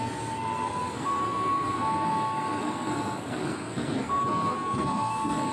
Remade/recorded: remade